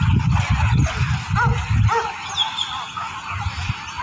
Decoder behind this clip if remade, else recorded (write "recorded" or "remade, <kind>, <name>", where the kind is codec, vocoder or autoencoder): recorded